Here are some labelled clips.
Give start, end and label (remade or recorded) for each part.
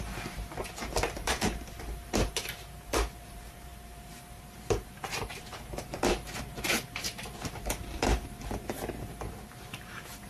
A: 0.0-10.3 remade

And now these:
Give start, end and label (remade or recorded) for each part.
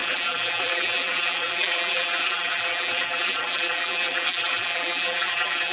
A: 0.0-5.7 remade